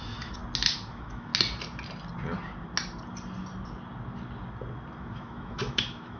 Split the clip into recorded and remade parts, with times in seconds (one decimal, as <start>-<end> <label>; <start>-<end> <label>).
0.0-0.4 remade; 0.4-0.9 recorded; 0.9-1.3 remade; 1.3-5.0 recorded; 5.0-6.2 remade